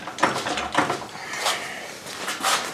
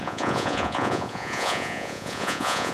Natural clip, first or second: first